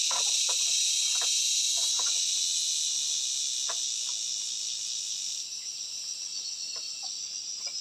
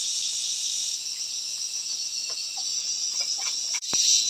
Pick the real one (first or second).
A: first